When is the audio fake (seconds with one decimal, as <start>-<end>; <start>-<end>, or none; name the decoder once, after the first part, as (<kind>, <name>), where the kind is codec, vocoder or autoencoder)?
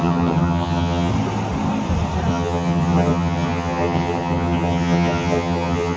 0.0-1.1 (vocoder, HiFi-GAN); 2.3-6.0